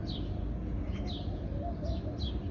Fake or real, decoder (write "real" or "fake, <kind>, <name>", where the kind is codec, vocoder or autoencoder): real